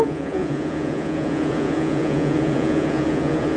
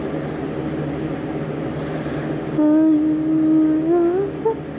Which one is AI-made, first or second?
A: first